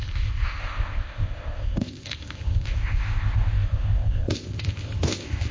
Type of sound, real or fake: fake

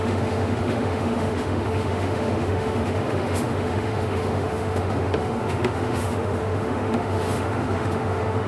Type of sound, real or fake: fake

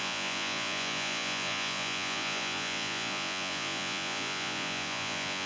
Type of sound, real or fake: fake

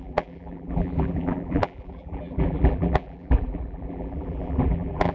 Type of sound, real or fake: fake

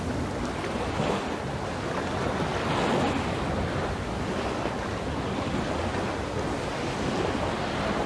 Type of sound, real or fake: real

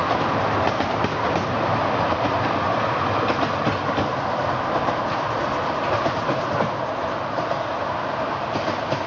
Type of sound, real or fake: real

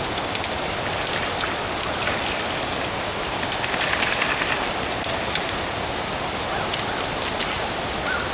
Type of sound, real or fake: real